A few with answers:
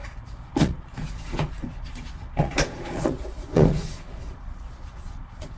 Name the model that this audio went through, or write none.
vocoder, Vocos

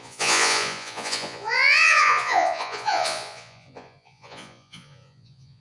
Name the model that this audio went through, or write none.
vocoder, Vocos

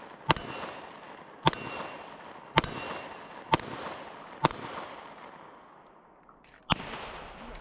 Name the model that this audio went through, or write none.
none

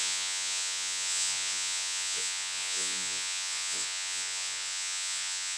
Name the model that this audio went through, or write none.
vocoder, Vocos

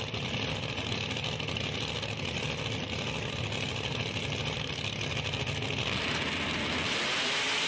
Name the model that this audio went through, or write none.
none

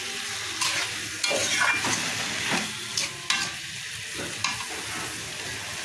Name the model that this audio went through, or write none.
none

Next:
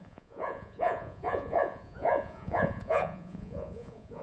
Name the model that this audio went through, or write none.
vocoder, Vocos